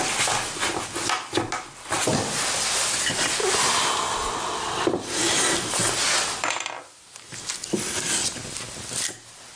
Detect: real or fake real